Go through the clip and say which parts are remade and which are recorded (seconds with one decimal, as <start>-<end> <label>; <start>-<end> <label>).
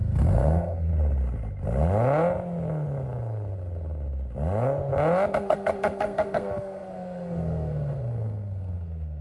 0.0-0.9 remade; 0.9-5.3 recorded; 5.3-9.2 remade